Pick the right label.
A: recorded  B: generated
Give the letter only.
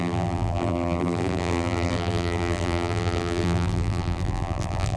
B